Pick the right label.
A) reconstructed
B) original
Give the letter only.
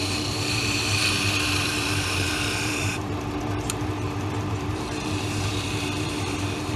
A